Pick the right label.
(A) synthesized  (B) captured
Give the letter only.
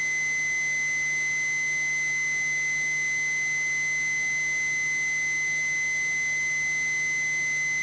B